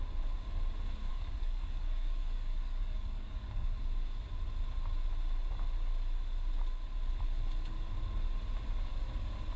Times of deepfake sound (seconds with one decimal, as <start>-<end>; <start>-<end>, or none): 1.1-3.8